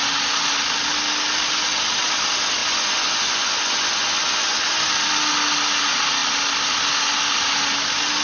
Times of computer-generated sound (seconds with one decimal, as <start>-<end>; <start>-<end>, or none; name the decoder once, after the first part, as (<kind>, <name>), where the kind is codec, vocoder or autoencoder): 2.6-4.7 (vocoder, Vocos)